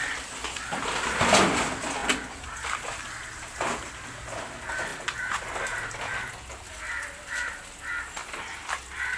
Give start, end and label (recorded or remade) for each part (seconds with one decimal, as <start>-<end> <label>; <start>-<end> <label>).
0.0-9.2 recorded